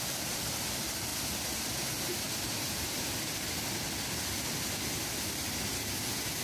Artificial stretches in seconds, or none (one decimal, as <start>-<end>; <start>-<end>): 0.0-6.4